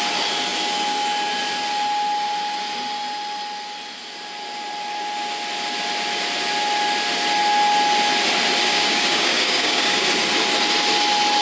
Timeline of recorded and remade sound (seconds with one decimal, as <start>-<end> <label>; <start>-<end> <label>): 0.0-8.7 recorded; 8.7-10.1 remade; 10.1-11.4 recorded